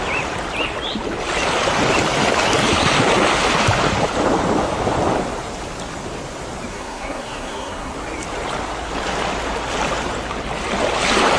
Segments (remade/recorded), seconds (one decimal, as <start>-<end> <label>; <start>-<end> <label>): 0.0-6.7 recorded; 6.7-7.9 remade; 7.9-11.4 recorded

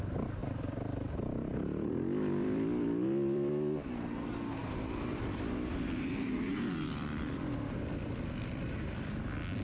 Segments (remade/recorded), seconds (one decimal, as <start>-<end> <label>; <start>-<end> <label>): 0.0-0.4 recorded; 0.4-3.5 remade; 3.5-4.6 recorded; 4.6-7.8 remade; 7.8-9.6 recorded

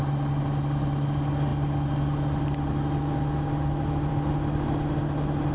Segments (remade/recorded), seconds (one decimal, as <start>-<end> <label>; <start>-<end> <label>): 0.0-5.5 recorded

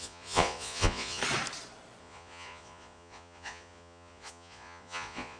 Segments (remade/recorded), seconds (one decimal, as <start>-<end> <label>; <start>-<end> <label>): 0.0-1.2 remade; 1.2-2.0 recorded; 2.0-5.4 remade